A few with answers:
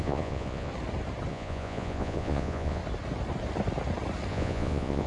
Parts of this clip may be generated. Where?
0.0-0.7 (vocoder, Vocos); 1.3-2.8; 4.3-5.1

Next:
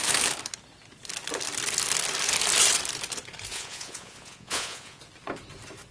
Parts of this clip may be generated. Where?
3.5-5.0 (vocoder, Vocos)

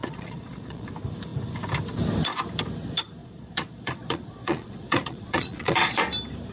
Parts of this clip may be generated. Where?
0.0-0.9 (vocoder, Vocos); 3.2-6.0

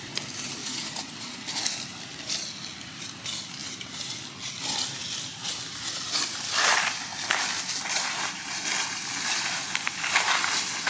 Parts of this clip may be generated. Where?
0.6-1.1 (vocoder, Vocos)

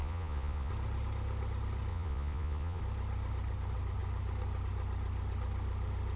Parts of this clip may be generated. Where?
0.0-0.7 (vocoder, Vocos); 1.9-2.8

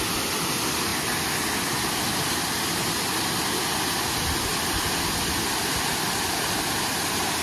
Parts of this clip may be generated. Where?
none

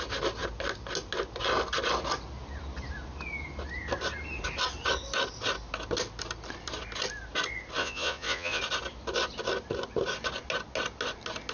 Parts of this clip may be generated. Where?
7.8-8.6 (vocoder, Vocos)

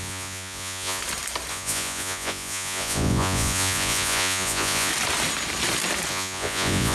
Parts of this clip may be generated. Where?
0.0-1.0 (vocoder, Vocos); 1.5-4.9; 6.1-6.9